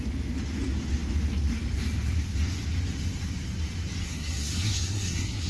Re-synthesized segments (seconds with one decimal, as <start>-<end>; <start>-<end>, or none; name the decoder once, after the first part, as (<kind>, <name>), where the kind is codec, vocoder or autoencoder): 4.0-5.5 (codec, SNAC)